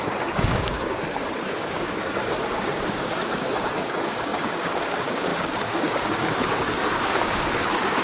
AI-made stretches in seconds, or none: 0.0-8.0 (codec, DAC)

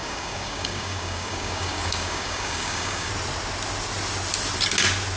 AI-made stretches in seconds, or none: 0.0-3.1 (codec, DAC)